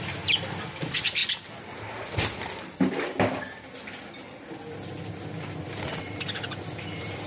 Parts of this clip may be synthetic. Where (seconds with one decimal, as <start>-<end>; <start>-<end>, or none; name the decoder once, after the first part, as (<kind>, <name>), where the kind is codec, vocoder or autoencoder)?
none